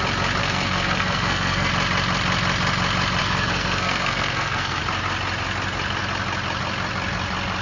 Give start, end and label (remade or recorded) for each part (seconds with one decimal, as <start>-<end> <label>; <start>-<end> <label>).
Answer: 0.0-0.4 recorded; 0.4-1.7 remade; 1.7-3.2 recorded; 3.2-4.8 remade; 4.8-7.6 recorded

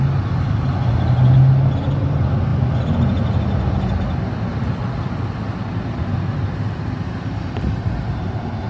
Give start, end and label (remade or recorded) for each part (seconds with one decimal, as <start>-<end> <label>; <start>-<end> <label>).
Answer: 0.0-8.7 recorded

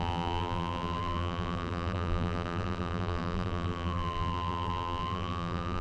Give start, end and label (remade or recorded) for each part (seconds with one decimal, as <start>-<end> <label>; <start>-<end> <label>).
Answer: 0.0-5.8 remade